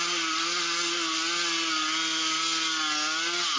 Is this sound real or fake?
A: real